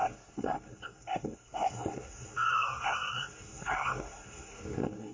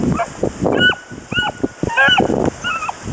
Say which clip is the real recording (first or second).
second